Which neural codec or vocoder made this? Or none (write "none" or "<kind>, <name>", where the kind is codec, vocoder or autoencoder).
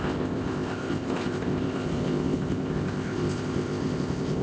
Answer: codec, ZipCodec